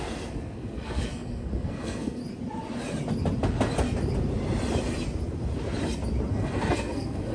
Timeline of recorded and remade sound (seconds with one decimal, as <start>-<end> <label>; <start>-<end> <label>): 0.0-2.2 remade; 2.2-6.3 recorded; 6.3-7.3 remade